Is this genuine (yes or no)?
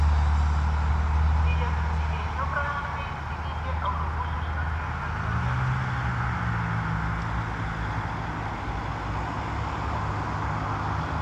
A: yes